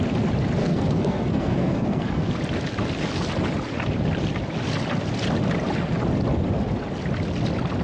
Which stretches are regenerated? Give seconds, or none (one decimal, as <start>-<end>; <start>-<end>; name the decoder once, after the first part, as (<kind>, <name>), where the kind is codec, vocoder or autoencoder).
0.6-2.3 (codec, SNAC)